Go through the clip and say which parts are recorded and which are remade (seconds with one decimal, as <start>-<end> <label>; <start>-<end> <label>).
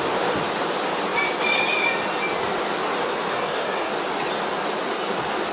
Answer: 0.0-3.3 recorded; 3.3-3.9 remade; 3.9-5.5 recorded